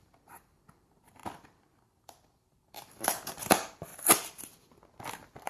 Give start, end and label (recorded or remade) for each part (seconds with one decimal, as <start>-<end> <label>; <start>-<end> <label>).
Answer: 0.0-5.5 remade